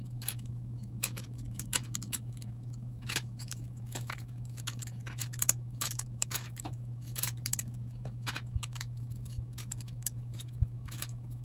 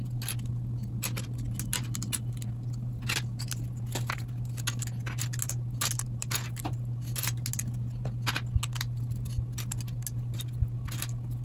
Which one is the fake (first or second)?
first